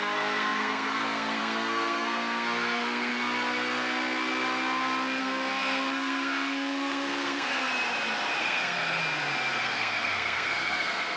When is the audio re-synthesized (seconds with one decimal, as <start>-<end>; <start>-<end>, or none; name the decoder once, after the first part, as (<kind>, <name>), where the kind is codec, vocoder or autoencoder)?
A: 0.0-3.1 (codec, SNAC); 5.2-7.7; 8.4-9.0; 9.6-11.2